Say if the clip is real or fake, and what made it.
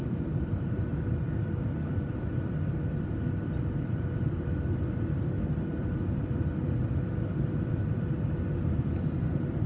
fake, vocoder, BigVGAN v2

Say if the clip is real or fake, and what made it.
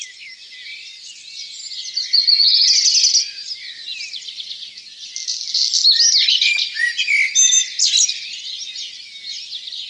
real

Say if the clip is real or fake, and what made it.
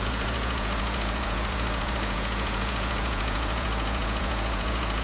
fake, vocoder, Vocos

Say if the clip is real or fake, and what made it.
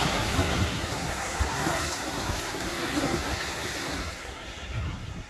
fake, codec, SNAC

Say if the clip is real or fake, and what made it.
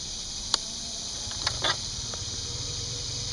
fake, vocoder, BigVGAN v2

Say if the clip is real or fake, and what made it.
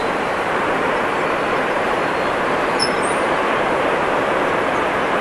fake, vocoder, BigVGAN v2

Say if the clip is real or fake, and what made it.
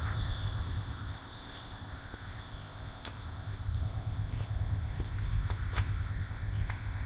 fake, codec, ZipCodec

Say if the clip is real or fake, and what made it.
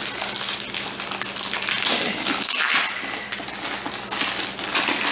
real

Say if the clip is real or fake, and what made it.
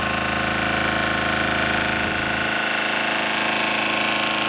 real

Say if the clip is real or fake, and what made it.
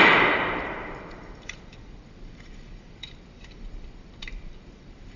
fake, vocoder, BigVGAN v2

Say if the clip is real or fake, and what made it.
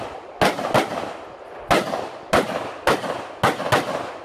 real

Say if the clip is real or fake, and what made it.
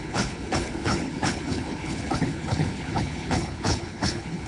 fake, codec, HILCodec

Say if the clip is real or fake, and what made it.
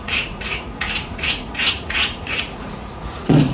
fake, vocoder, Vocos